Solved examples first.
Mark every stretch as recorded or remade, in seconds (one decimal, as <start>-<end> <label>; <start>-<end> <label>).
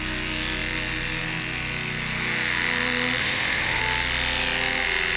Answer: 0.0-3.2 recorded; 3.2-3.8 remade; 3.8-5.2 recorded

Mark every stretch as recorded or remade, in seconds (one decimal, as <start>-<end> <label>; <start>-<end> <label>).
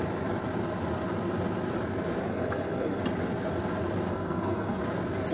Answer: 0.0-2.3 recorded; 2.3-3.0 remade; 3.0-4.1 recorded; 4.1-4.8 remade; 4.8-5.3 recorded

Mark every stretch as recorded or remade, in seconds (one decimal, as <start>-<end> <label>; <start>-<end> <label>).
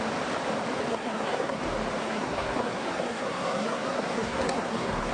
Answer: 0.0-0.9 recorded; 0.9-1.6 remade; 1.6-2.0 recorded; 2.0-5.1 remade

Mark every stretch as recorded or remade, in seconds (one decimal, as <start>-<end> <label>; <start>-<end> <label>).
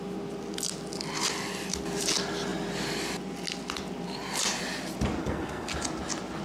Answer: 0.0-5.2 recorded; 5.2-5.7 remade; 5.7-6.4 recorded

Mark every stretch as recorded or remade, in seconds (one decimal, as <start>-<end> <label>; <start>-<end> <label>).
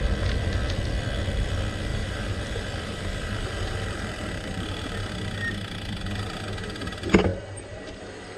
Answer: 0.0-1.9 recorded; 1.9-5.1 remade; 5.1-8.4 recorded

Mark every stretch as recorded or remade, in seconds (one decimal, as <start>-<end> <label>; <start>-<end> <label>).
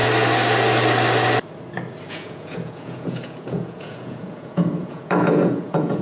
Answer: 0.0-2.1 recorded; 2.1-6.0 remade